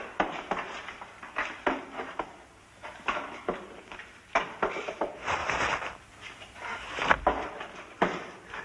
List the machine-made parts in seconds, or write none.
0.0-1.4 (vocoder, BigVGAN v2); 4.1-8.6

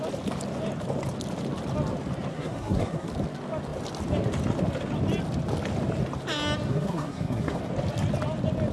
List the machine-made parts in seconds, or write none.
2.3-3.1 (codec, SNAC); 6.7-7.6

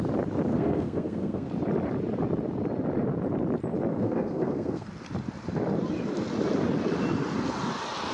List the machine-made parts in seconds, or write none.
0.5-1.5 (codec, SNAC); 3.9-4.9

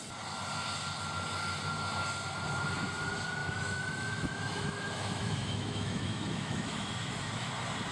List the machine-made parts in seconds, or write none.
3.4-7.5 (autoencoder, DAC-VAE)